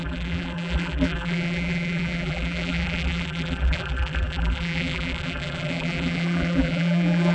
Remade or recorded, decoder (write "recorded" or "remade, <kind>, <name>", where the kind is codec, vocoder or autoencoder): remade, vocoder, BigVGAN v2